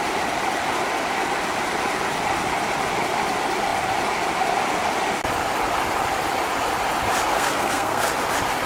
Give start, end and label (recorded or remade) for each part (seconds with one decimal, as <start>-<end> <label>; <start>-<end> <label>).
0.0-7.3 recorded; 7.3-8.1 remade; 8.1-8.7 recorded